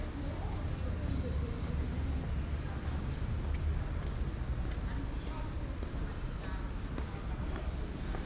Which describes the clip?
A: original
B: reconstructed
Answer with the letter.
A